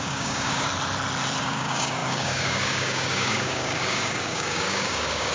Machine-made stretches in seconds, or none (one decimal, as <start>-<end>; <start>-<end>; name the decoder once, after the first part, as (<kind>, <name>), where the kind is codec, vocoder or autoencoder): 0.0-0.7 (codec, DAC); 1.4-5.3